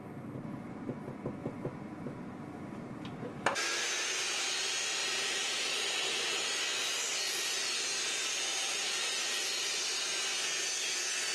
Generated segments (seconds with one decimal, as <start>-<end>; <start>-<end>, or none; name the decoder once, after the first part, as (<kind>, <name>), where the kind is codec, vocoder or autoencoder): 1.4-3.6 (vocoder, BigVGAN v2); 5.0-6.6; 8.5-10.1